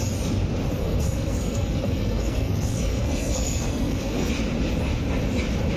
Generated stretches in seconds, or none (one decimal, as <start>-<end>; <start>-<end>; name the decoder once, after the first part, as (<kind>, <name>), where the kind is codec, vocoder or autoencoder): 0.8-4.3 (codec, SNAC)

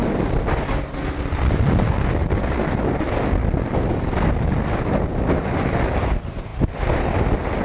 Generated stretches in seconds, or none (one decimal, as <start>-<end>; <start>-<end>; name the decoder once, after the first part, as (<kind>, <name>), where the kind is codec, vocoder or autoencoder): none

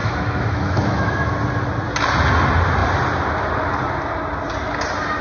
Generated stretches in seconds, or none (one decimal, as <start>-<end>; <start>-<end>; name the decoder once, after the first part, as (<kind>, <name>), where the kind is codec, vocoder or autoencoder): 0.0-1.3 (autoencoder, DAC-VAE)